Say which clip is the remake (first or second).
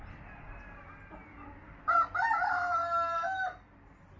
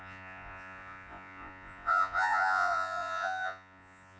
second